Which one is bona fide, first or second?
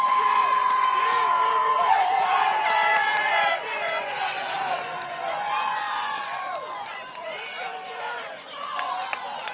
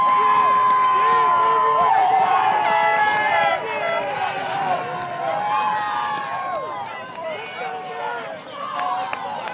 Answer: second